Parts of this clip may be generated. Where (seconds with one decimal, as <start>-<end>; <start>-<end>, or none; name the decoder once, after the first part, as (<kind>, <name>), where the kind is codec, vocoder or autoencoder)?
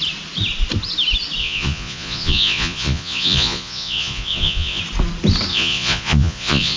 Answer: 1.4-4.8 (vocoder, Vocos); 5.5-6.8